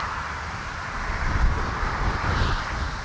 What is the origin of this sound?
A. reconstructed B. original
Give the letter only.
B